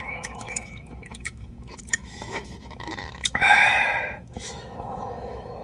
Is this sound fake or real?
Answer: fake